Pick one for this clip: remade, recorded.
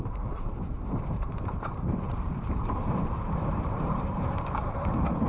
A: remade